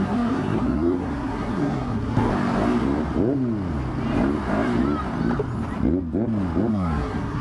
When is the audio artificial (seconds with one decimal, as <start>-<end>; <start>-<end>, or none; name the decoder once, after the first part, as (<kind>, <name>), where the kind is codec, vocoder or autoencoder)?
0.0-2.3 (codec, SNAC); 6.7-7.4